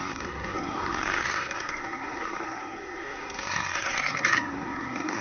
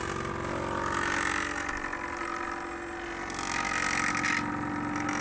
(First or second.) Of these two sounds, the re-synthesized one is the first